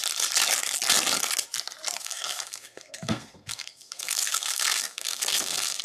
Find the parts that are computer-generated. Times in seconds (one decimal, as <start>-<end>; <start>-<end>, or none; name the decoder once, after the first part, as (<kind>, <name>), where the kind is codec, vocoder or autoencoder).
2.0-5.8 (codec, SNAC)